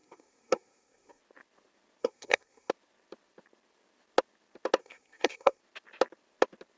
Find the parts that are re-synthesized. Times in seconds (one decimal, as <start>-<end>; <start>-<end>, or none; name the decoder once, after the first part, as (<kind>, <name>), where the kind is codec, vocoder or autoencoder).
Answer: 0.0-1.2 (codec, SNAC); 2.0-2.7; 4.8-5.6

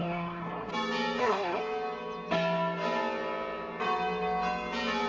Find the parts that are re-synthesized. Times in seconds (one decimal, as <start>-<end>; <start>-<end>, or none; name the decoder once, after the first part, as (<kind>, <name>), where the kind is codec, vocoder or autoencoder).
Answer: 0.0-0.7 (codec, SNAC); 1.2-1.6